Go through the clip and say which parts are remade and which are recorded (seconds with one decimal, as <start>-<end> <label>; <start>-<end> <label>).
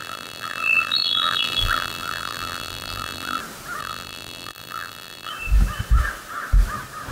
0.0-3.4 remade; 3.4-3.8 recorded; 3.8-5.3 remade; 5.3-7.1 recorded